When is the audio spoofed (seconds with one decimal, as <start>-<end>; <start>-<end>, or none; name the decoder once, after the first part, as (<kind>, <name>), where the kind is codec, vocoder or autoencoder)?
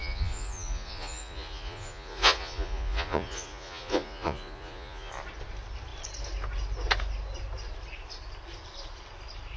0.0-5.1 (vocoder, Vocos)